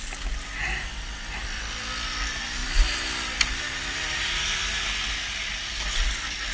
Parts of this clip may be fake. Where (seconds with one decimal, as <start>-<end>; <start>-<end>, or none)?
none